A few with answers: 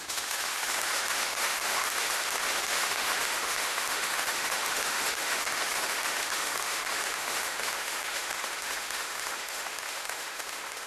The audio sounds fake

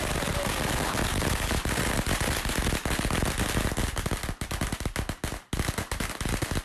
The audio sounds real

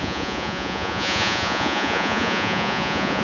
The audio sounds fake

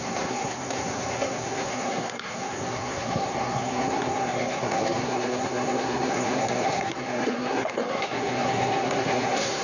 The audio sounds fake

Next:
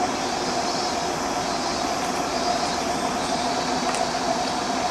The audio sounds real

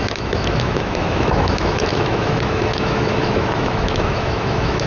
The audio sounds fake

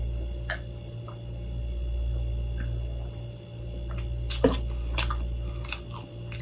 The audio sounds real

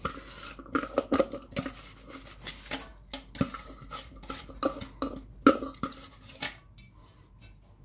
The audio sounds real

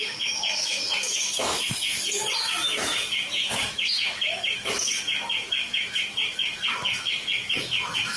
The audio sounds fake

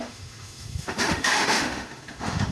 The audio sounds fake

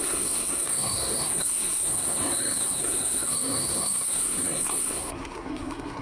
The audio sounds fake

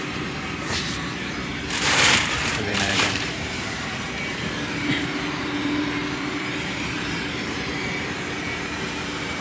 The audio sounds fake